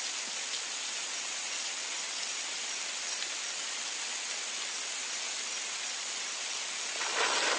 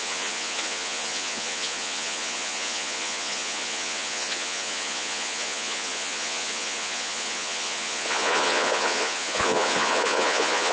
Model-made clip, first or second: second